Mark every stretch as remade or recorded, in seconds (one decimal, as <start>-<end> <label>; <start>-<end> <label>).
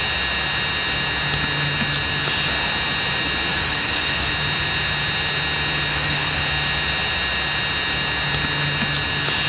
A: 0.0-3.5 recorded; 3.5-4.3 remade; 4.3-5.9 recorded; 5.9-6.4 remade; 6.4-9.5 recorded